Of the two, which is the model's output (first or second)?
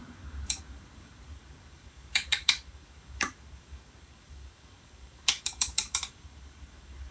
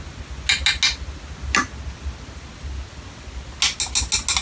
first